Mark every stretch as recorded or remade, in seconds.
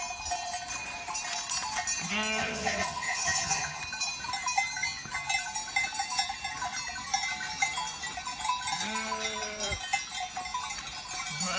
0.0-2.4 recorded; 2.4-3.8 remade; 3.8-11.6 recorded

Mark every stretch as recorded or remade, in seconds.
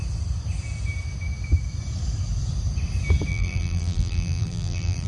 0.0-3.3 recorded; 3.3-5.1 remade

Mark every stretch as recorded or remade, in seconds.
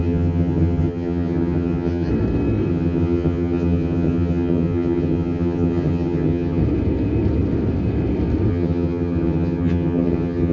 0.0-2.1 remade; 2.1-2.7 recorded; 2.7-6.6 remade; 6.6-8.5 recorded; 8.5-10.5 remade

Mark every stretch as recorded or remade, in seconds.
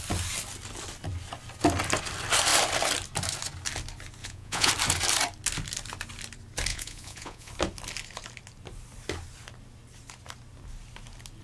0.0-4.2 recorded; 4.2-4.7 remade; 4.7-6.7 recorded; 6.7-7.5 remade; 7.5-11.4 recorded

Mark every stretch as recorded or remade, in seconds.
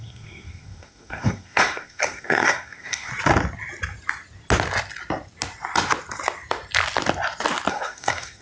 0.0-3.1 remade; 3.1-7.7 recorded; 7.7-8.4 remade